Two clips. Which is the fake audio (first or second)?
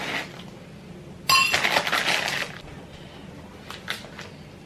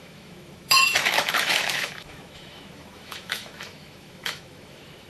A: second